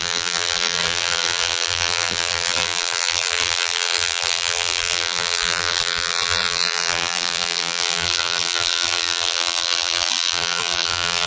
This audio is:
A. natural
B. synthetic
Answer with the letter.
B